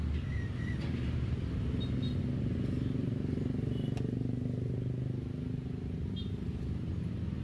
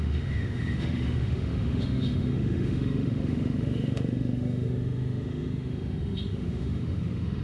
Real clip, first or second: first